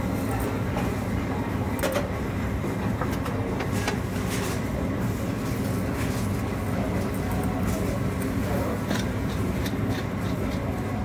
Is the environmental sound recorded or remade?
recorded